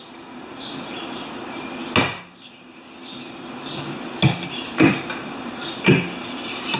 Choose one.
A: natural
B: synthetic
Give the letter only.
A